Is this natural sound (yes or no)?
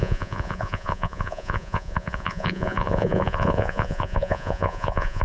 no